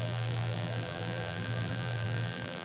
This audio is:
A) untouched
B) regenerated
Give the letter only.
B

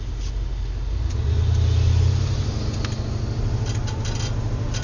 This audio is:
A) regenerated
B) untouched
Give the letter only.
B